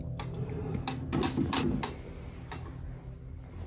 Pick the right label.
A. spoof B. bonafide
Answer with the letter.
B